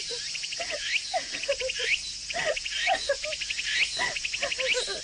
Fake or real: real